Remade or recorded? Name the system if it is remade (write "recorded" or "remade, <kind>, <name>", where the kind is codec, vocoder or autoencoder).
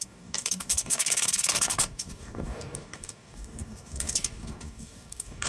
remade, codec, DAC